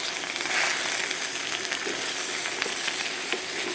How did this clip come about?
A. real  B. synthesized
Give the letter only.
A